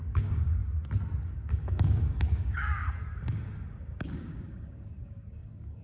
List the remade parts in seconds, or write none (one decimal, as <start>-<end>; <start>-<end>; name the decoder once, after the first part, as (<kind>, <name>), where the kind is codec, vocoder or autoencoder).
0.0-0.6 (codec, DAC); 1.2-5.8